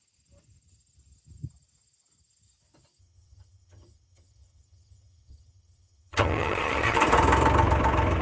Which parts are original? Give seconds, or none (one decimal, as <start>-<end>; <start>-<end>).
0.0-3.0; 7.0-8.2